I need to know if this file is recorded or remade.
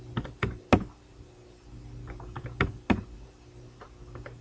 recorded